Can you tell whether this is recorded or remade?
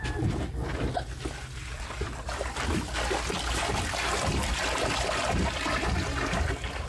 recorded